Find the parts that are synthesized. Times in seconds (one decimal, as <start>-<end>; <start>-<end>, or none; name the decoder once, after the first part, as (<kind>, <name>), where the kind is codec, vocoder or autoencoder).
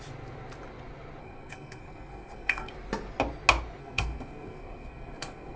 1.2-2.7 (codec, SNAC); 3.8-5.6